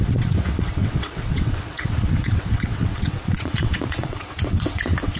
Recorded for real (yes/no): no